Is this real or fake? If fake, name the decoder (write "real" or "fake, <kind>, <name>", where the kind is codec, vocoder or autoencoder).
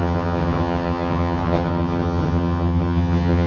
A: fake, vocoder, HiFi-GAN